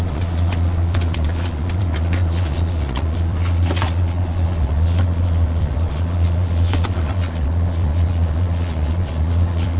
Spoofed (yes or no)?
yes